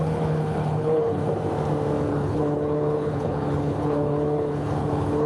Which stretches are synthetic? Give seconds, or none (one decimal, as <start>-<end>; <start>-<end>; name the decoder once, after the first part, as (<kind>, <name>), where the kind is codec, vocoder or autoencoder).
0.0-1.2 (codec, HILCodec); 2.1-5.3